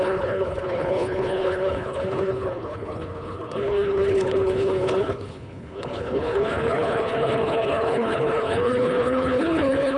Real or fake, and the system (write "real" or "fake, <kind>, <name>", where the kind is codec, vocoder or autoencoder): fake, codec, HILCodec